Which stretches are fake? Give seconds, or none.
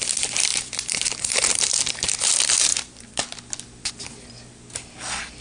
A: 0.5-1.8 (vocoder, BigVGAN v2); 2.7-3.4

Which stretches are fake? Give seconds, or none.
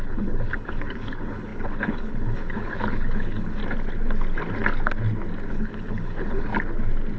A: 0.0-3.6 (codec, HILCodec); 5.5-6.5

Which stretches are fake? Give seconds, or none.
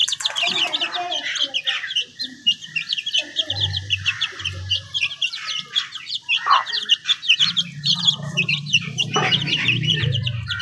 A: 2.2-10.6 (vocoder, BigVGAN v2)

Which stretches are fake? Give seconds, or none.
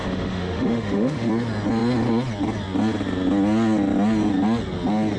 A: 0.0-1.3 (autoencoder, DAC-VAE)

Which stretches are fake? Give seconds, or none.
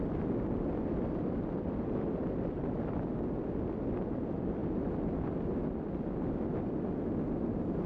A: 0.0-7.9 (vocoder, BigVGAN v2)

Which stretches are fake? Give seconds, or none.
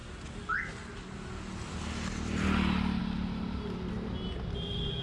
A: none